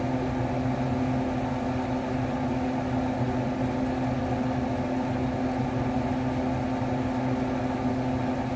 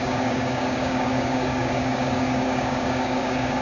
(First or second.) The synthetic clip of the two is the second